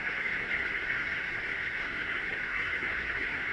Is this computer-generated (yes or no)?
yes